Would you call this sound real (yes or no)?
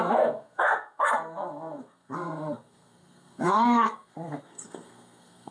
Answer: no